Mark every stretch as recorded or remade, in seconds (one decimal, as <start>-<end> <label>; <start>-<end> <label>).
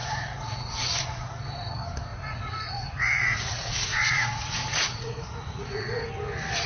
0.0-1.3 remade; 1.3-2.1 recorded; 2.1-6.1 remade; 6.1-6.7 recorded